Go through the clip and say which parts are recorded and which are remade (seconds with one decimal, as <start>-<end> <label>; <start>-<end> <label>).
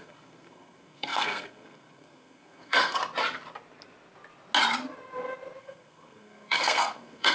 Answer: 0.0-3.0 remade; 3.0-5.6 recorded; 5.6-7.3 remade